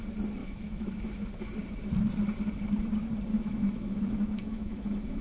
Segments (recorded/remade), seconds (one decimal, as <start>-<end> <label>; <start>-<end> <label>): 0.0-0.4 recorded; 0.4-1.3 remade; 1.3-3.3 recorded; 3.3-5.2 remade

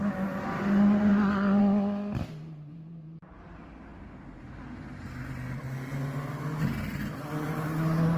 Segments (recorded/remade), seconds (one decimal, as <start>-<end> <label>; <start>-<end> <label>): 0.0-8.2 recorded

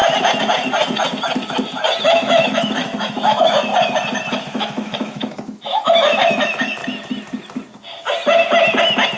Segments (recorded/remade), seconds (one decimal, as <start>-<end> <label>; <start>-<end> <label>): 0.0-2.0 recorded; 2.0-3.7 remade; 3.7-4.3 recorded; 4.3-6.8 remade; 6.8-9.2 recorded

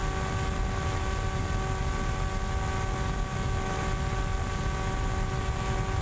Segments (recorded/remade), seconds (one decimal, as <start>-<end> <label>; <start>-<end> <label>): 0.0-6.0 recorded